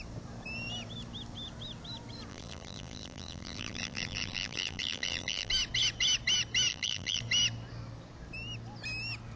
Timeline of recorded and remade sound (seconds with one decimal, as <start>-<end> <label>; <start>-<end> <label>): 0.0-2.3 recorded; 2.3-5.5 remade; 5.5-6.7 recorded; 6.7-7.2 remade; 7.2-9.4 recorded